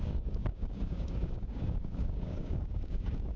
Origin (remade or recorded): remade